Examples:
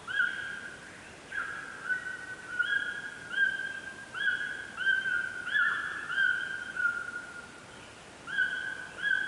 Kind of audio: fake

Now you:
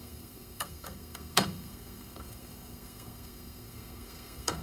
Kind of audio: fake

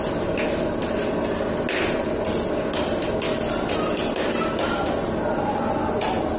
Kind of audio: real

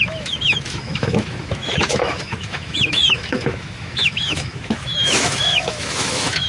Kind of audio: fake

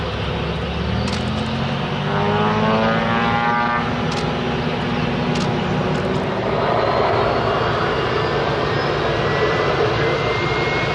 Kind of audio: real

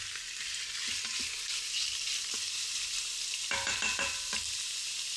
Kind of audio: real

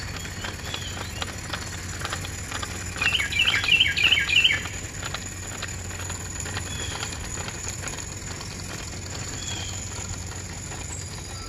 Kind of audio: real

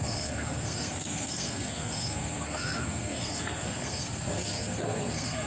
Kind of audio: fake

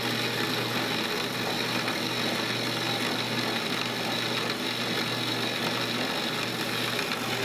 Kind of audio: real